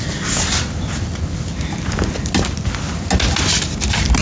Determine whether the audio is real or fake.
real